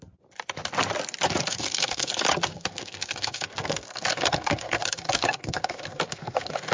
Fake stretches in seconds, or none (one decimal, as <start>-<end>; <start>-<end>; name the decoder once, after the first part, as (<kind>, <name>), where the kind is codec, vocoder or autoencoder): 1.5-2.1 (codec, SNAC); 2.5-6.7